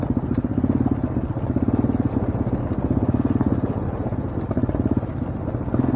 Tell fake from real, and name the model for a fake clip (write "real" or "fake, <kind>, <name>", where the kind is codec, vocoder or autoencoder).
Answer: real